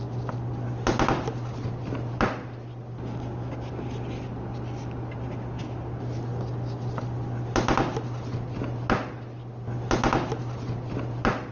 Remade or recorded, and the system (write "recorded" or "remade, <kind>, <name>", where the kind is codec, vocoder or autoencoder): recorded